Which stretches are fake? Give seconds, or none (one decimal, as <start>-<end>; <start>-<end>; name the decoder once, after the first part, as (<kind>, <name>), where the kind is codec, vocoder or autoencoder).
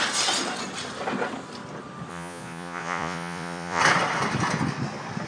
2.1-3.8 (vocoder, Vocos)